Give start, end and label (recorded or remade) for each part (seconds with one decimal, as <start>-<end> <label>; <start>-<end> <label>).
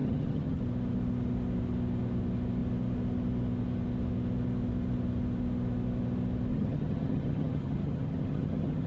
0.0-0.6 remade; 0.6-6.5 recorded; 6.5-8.9 remade